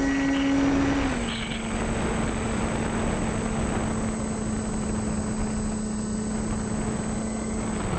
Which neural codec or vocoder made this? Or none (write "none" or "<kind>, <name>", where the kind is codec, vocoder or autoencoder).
none